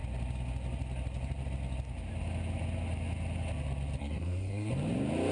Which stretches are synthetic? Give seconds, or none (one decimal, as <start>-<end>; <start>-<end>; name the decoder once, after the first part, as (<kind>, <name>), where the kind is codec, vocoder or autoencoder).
4.0-4.7 (codec, SNAC)

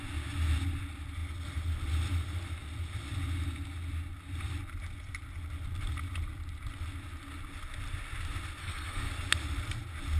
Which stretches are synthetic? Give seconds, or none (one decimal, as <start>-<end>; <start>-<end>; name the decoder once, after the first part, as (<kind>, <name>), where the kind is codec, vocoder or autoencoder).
8.6-9.1 (codec, SNAC)

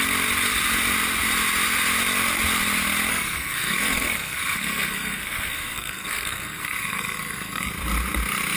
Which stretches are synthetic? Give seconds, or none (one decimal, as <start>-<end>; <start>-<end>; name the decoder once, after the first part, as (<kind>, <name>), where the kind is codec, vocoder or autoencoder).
3.1-7.7 (codec, SNAC)

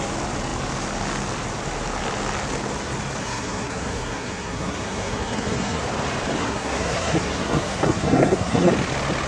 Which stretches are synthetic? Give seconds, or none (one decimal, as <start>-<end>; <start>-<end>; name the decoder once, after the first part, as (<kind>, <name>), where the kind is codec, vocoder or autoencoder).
3.2-5.8 (codec, SNAC); 6.4-8.7

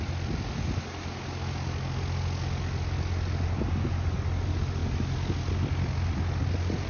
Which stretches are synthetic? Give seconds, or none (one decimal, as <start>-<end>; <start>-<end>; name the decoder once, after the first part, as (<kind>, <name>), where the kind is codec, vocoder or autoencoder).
none

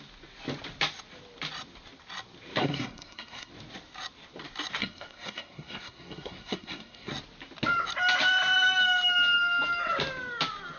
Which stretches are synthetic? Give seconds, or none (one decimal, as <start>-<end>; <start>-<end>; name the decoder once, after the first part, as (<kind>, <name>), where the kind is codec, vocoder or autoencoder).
2.6-3.5 (codec, SNAC); 4.8-7.1